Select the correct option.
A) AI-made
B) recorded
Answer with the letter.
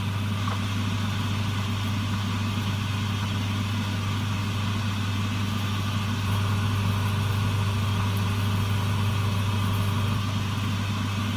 B